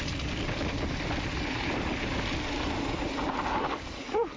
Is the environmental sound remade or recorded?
recorded